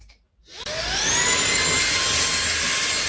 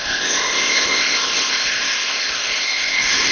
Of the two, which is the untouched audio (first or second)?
first